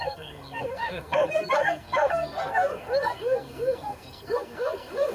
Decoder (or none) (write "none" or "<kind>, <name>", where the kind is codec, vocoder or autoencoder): codec, SNAC